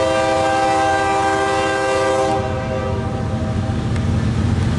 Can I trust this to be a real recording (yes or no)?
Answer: yes